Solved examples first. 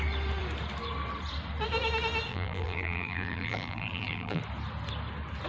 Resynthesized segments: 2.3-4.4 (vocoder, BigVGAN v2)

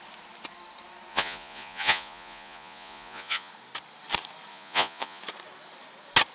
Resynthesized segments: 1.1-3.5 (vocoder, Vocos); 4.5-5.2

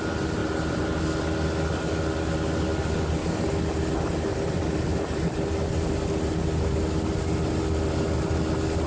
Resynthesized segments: 0.4-1.0 (vocoder, BigVGAN v2); 4.3-5.4